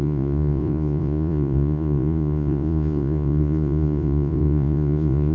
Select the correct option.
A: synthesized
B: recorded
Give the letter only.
A